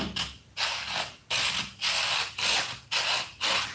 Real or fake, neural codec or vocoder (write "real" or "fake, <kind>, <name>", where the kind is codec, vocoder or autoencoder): real